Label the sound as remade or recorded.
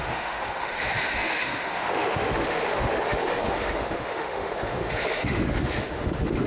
remade